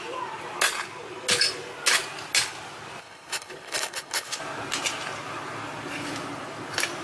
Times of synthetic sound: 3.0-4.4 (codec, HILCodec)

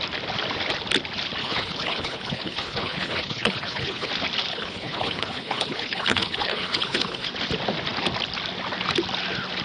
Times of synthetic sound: 1.4-4.1 (codec, HILCodec); 4.5-7.3